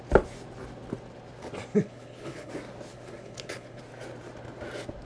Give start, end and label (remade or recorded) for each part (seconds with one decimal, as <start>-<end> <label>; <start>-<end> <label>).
0.0-1.7 recorded; 1.7-2.5 remade; 2.5-2.9 recorded; 2.9-3.8 remade; 3.8-5.1 recorded